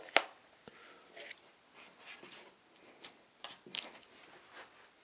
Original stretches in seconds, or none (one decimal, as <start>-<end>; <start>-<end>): 0.0-5.0